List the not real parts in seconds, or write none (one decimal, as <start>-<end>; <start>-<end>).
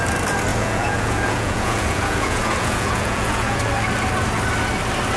0.5-3.6